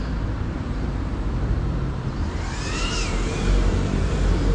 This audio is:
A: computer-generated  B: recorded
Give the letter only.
A